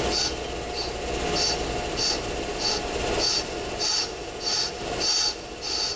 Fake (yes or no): no